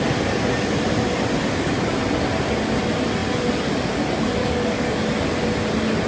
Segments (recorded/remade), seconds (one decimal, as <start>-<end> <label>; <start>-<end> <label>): 0.0-4.4 recorded; 4.4-5.0 remade; 5.0-6.1 recorded